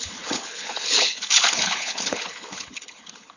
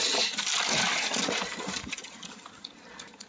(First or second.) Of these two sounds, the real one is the second